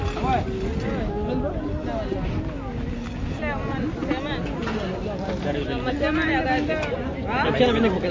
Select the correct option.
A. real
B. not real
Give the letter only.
A